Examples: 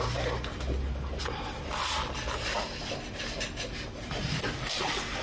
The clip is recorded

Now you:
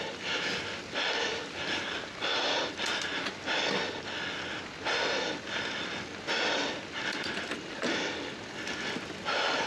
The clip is recorded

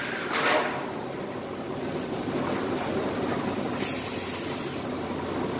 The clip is recorded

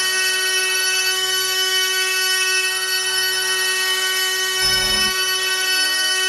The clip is remade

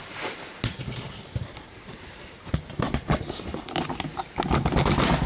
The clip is recorded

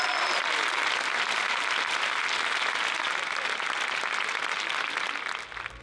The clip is recorded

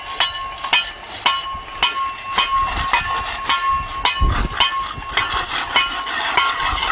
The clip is recorded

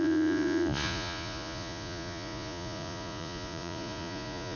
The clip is remade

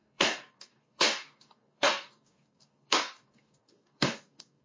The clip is remade